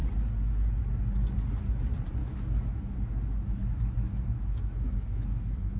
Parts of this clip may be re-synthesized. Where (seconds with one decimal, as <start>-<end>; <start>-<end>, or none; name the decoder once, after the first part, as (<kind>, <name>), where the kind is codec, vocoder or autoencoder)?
2.2-5.8 (autoencoder, DAC-VAE)